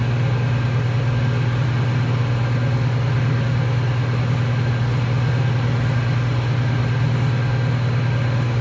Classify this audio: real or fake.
real